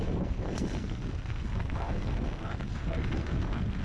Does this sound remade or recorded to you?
remade